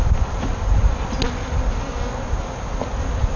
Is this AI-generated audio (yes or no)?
no